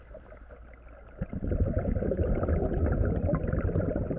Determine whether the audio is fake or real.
real